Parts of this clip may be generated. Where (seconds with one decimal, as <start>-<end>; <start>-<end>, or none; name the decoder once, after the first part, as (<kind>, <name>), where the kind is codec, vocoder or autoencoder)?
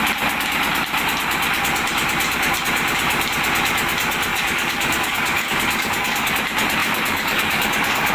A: 4.3-6.3 (codec, DAC); 6.8-8.1